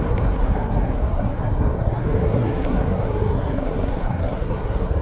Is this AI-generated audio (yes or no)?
yes